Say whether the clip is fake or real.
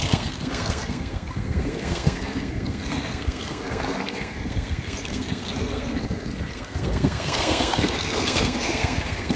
fake